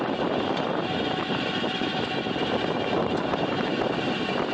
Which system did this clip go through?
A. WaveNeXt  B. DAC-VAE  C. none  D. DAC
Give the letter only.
C